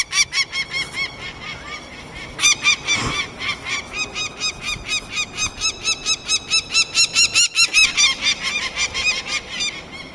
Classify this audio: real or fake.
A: real